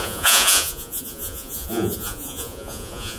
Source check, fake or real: fake